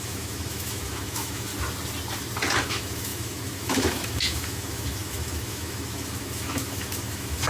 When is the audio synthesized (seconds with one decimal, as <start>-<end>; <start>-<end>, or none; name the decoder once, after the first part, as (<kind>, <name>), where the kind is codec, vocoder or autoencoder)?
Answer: 0.0-1.5 (autoencoder, DAC-VAE); 2.6-7.5

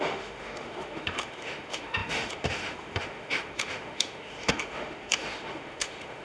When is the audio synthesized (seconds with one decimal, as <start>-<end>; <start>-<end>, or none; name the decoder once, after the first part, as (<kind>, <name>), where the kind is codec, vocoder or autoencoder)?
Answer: 0.0-6.2 (autoencoder, DAC-VAE)

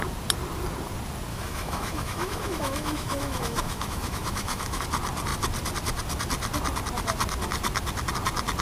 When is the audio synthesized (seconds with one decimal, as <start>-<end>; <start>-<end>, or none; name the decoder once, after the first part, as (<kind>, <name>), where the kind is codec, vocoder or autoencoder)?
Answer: 1.3-4.8 (autoencoder, DAC-VAE)

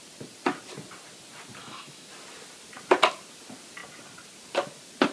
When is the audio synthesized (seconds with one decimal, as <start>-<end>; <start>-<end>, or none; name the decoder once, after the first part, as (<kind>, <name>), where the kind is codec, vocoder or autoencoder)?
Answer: 1.6-2.1 (autoencoder, DAC-VAE)

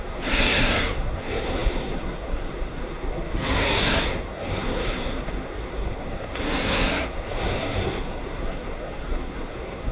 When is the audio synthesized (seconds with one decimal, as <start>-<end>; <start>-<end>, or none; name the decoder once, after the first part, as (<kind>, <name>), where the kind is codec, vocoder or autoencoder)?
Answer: 0.0-9.9 (codec, SNAC)

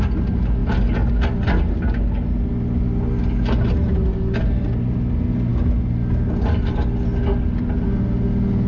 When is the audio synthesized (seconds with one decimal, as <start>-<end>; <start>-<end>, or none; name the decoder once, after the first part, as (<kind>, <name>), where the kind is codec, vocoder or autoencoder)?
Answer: none